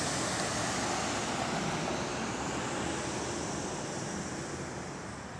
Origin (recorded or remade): recorded